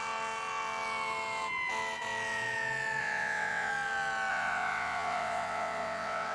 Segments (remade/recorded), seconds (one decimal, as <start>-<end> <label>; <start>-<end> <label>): 0.0-3.0 recorded; 3.0-3.7 remade; 3.7-4.3 recorded; 4.3-6.3 remade